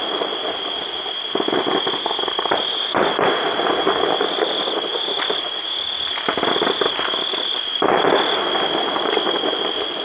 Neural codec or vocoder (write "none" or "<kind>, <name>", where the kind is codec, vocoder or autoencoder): none